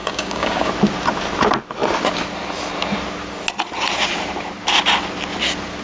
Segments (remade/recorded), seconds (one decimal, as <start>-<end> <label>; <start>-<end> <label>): 0.0-0.7 remade; 0.7-5.8 recorded

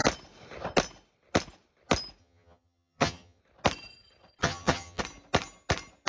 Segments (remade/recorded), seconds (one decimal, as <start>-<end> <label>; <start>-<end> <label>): 0.0-2.2 recorded; 2.2-3.4 remade; 3.4-4.4 recorded; 4.4-5.0 remade; 5.0-6.1 recorded

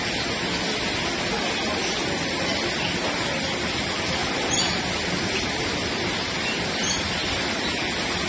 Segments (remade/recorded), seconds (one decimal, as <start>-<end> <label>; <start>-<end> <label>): 0.0-7.2 recorded; 7.2-7.8 remade; 7.8-8.3 recorded

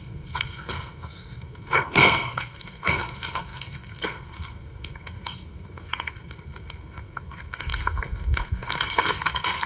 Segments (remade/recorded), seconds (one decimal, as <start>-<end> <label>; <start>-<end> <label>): 0.0-9.7 remade

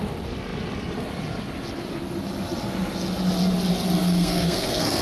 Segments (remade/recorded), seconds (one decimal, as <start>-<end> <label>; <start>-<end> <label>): 0.0-4.0 recorded; 4.0-5.0 remade

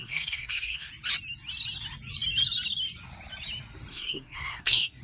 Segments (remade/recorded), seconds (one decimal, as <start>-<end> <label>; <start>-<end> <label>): 0.0-0.9 remade; 0.9-3.9 recorded; 3.9-5.0 remade

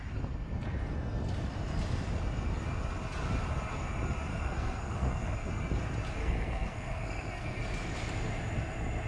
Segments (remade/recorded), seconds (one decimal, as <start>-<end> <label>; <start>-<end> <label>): 0.0-4.3 recorded; 4.3-5.5 remade; 5.5-6.2 recorded; 6.2-7.6 remade; 7.6-9.1 recorded

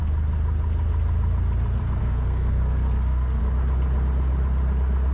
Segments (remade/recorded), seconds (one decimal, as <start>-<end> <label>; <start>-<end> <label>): 0.0-2.0 recorded; 2.0-3.4 remade; 3.4-5.1 recorded